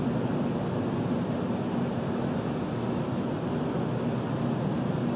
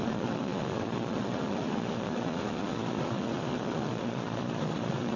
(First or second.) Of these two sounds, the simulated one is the second